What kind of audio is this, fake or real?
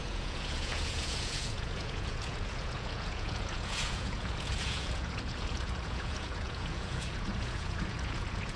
fake